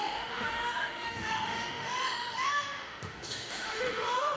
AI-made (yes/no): yes